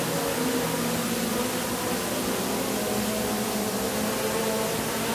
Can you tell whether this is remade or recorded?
recorded